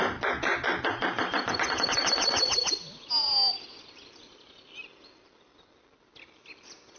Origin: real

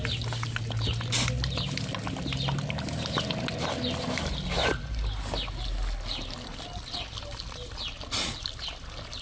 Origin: real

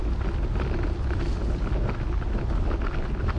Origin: real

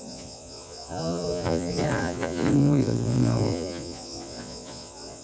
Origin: fake